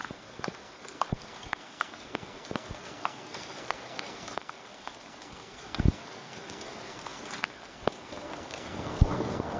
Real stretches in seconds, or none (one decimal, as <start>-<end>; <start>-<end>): none